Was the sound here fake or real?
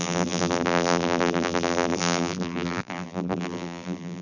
fake